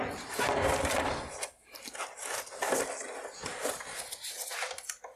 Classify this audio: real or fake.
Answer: real